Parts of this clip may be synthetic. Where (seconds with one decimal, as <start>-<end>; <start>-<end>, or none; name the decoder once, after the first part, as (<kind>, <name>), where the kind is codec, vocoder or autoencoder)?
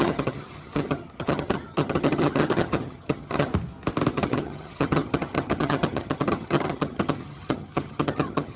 0.0-3.5 (vocoder, HiFi-GAN); 4.1-8.6